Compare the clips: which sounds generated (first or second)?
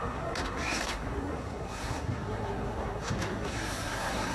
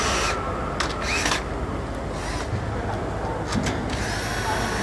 first